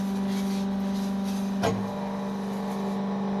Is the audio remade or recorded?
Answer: recorded